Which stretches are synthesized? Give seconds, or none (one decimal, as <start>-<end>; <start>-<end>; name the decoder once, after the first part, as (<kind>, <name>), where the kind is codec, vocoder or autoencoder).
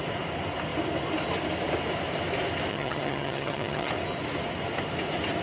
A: 2.7-3.9 (vocoder, HiFi-GAN)